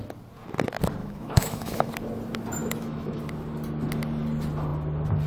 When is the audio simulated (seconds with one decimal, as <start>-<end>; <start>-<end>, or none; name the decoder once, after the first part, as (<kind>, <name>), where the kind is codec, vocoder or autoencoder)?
1.0-1.9 (autoencoder, DAC-VAE); 2.6-3.2